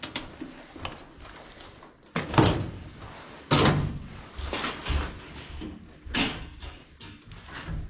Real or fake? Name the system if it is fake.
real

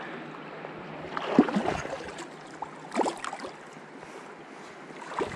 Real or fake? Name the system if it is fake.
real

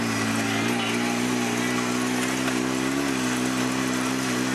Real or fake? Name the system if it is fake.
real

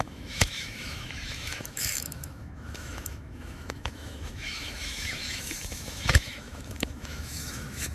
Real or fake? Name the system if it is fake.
fake, autoencoder, DAC-VAE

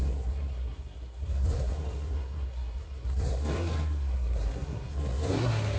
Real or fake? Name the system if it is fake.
fake, codec, SNAC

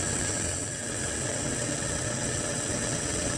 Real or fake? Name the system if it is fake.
fake, vocoder, WaveNeXt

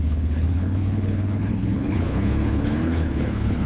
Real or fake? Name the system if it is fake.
fake, codec, HILCodec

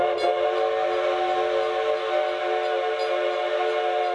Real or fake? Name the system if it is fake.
real